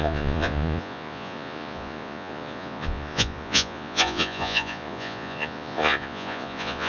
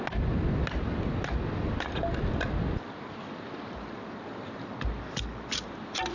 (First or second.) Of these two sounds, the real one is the second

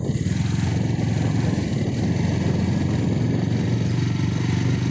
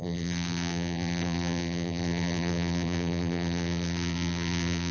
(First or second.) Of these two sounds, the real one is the first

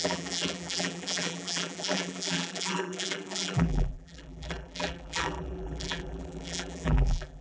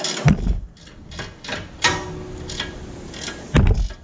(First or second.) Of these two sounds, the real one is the second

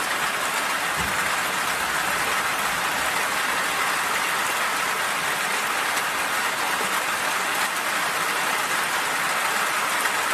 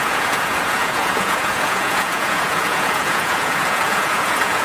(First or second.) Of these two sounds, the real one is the first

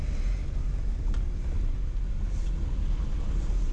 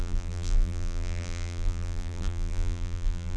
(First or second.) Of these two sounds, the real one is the first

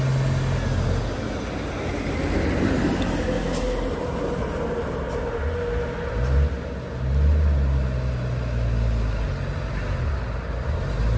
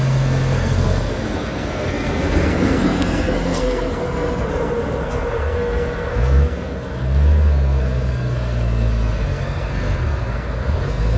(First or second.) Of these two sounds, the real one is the first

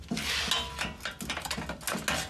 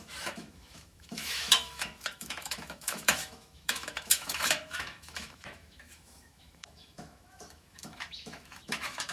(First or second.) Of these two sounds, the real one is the first